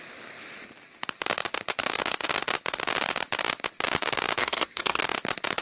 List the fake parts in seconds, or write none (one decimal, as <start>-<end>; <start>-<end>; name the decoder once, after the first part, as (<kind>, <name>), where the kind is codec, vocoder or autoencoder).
4.4-5.0 (codec, SNAC)